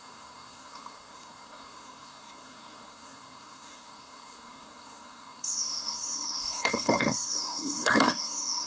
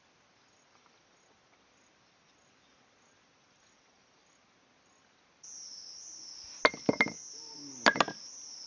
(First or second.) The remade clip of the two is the first